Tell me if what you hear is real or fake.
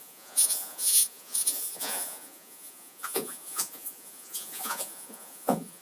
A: fake